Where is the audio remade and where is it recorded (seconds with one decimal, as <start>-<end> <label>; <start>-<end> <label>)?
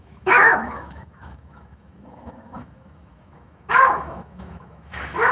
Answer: 0.0-5.3 remade